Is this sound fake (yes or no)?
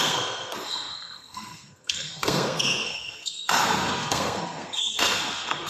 yes